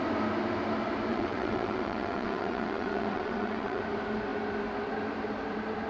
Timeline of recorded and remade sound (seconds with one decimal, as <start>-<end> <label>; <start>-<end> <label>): 0.0-1.1 recorded; 1.1-3.8 remade; 3.8-5.9 recorded